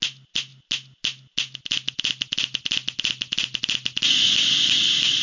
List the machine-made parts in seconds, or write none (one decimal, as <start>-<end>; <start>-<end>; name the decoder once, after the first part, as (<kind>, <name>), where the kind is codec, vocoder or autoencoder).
none